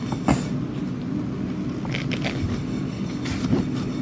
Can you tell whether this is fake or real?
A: real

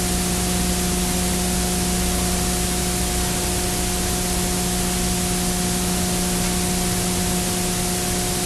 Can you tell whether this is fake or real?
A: real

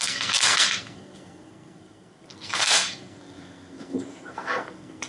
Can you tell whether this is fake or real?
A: fake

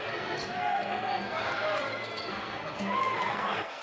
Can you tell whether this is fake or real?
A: fake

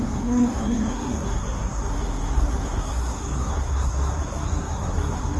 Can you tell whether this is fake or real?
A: fake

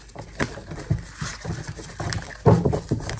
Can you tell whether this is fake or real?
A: real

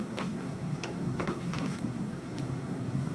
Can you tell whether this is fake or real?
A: fake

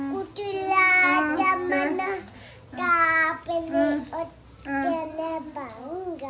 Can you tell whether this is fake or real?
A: real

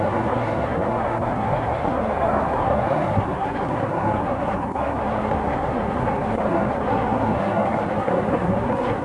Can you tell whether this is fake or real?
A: fake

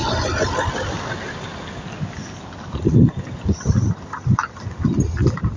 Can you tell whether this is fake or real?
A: real